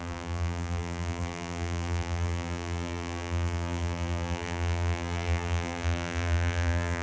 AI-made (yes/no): yes